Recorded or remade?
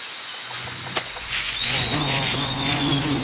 remade